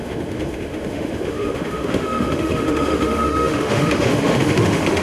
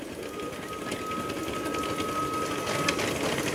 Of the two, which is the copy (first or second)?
first